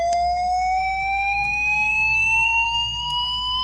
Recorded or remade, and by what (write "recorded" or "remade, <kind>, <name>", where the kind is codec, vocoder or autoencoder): remade, codec, SNAC